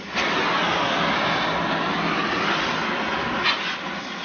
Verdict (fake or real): real